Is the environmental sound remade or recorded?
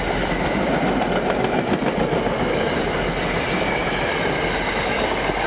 recorded